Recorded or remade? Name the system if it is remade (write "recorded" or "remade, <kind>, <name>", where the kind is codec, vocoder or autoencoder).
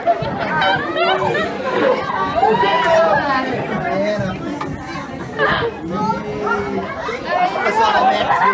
recorded